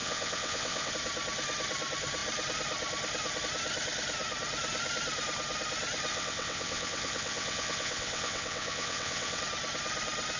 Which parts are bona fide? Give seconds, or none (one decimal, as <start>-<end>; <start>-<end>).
0.9-6.1; 9.4-10.4